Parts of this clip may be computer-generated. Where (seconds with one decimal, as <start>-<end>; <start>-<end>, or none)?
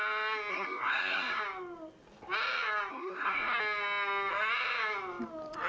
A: 0.5-1.4; 2.9-3.6